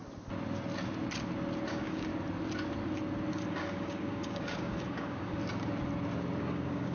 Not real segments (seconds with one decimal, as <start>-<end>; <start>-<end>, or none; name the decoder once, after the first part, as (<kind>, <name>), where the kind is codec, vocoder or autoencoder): 1.7-2.1 (codec, DAC); 3.3-5.4; 6.4-6.9